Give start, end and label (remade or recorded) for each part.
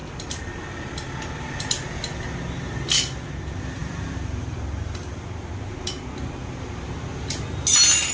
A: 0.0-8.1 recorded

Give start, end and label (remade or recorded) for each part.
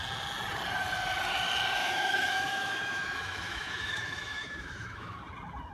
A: 0.0-1.8 recorded; 1.8-5.2 remade; 5.2-5.7 recorded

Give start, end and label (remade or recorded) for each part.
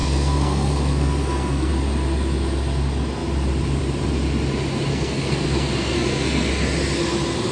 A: 0.0-1.7 remade; 1.7-4.9 recorded; 4.9-6.5 remade; 6.5-7.5 recorded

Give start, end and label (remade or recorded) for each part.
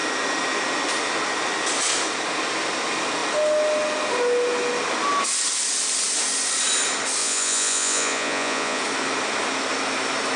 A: 0.0-7.2 recorded; 7.2-8.8 remade; 8.8-10.4 recorded